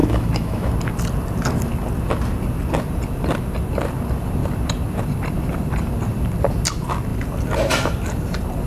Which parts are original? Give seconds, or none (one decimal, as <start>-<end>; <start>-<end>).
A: 0.7-8.7